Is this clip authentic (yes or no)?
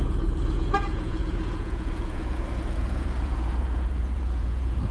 no